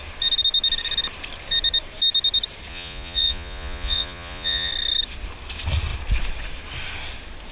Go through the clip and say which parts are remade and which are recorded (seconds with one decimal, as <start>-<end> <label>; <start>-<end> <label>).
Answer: 0.0-2.7 recorded; 2.7-4.7 remade; 4.7-7.5 recorded